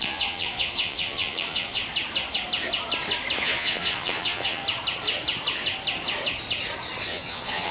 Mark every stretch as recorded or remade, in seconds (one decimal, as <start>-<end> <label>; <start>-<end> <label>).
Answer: 0.0-1.8 remade; 1.8-3.4 recorded; 3.4-4.6 remade; 4.6-7.0 recorded; 7.0-7.7 remade